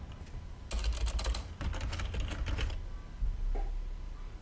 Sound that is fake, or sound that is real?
real